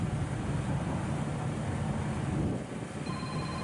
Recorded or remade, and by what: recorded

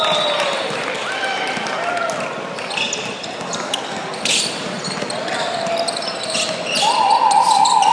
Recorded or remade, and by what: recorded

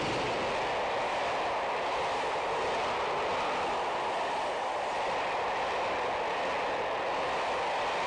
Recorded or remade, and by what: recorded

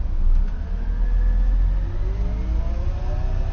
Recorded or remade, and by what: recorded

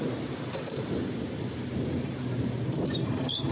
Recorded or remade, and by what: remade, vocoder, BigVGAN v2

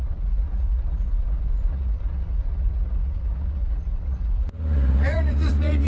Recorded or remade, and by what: remade, vocoder, Vocos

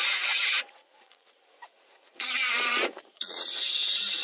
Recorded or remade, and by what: remade, vocoder, Vocos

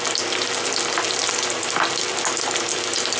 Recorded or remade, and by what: recorded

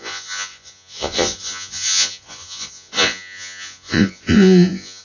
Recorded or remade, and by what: remade, vocoder, Vocos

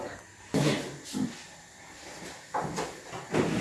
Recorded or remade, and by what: recorded